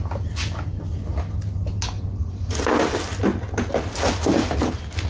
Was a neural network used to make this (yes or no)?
no